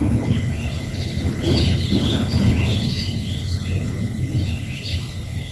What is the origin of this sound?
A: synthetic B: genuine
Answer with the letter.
A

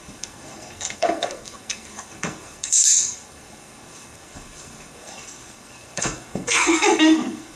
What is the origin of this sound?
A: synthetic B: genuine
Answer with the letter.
A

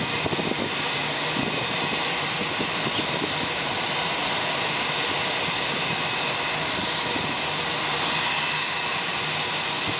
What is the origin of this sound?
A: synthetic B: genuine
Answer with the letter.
B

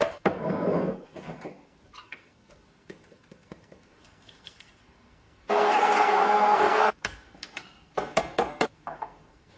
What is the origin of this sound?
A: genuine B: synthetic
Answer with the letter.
B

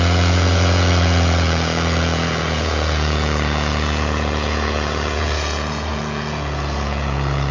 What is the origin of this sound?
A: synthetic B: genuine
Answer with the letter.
A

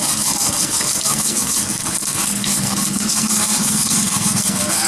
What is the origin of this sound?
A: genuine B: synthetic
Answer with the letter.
B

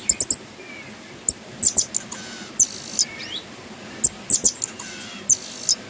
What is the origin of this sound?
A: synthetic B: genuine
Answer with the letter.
B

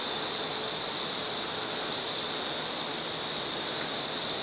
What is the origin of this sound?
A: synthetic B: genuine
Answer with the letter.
B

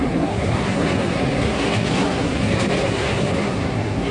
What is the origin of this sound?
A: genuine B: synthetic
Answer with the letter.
B